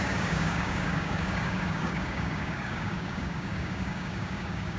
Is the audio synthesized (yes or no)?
yes